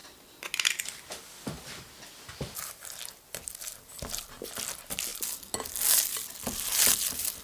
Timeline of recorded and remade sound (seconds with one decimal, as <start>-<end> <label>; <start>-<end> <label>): 0.0-0.8 recorded; 0.8-5.1 remade; 5.1-6.7 recorded; 6.7-7.4 remade